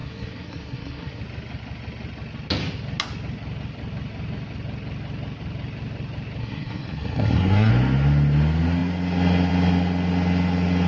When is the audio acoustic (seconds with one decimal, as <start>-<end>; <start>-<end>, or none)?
1.2-6.4; 7.7-10.9